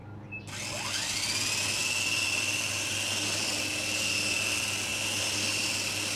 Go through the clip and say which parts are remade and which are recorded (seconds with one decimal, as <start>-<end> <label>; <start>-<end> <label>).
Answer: 0.0-6.2 recorded